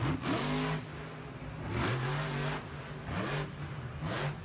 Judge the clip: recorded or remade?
recorded